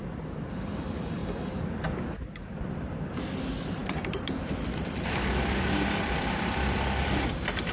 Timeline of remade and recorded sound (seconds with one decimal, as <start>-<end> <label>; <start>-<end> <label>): 0.0-1.2 remade; 1.2-2.2 recorded; 2.2-7.7 remade